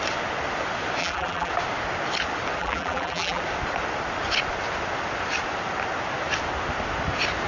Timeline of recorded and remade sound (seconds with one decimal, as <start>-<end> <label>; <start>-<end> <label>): 0.0-1.0 recorded; 1.0-1.5 remade; 1.5-2.6 recorded; 2.6-3.4 remade; 3.4-7.5 recorded

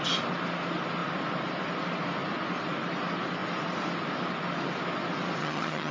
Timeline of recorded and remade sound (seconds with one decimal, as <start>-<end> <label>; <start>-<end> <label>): 0.0-5.4 recorded; 5.4-5.9 remade